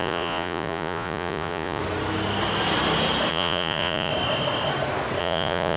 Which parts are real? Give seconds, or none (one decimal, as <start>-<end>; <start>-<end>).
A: 1.8-3.3; 4.1-5.2